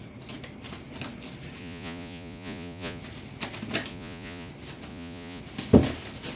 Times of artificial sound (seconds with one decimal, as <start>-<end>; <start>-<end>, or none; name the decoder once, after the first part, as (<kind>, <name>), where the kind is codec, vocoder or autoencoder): 1.6-3.0 (vocoder, Vocos); 3.9-4.5; 4.9-5.4